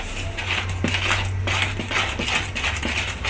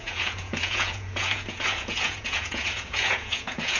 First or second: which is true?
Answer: first